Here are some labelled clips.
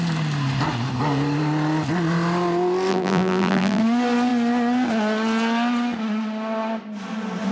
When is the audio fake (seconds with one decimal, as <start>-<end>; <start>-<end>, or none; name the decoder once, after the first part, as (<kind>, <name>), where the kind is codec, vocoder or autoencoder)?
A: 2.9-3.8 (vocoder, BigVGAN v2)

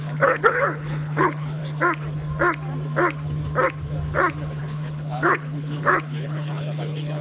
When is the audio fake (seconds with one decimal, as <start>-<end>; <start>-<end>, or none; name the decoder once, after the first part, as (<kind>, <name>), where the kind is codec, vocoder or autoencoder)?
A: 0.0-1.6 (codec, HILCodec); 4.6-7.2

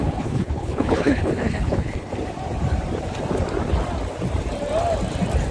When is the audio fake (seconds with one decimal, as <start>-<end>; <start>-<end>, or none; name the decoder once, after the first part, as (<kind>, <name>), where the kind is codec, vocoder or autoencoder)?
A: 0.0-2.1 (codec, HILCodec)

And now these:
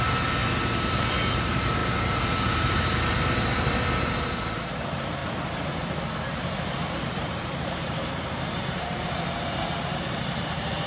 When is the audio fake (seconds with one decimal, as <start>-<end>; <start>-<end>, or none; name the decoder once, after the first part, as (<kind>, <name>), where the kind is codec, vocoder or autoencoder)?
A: 0.0-0.4 (vocoder, BigVGAN v2); 1.3-5.2; 6.4-10.9

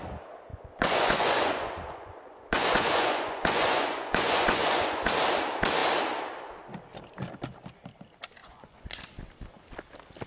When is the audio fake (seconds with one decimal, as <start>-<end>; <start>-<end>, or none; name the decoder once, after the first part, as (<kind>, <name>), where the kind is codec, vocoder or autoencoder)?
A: 0.5-5.1 (vocoder, Vocos); 8.4-9.0